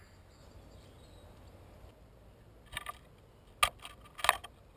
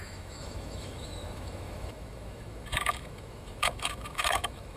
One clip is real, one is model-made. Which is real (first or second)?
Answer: first